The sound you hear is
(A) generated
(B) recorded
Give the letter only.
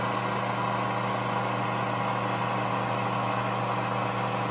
B